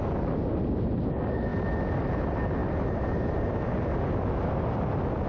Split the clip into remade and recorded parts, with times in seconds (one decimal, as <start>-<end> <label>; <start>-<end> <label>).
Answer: 0.0-5.3 recorded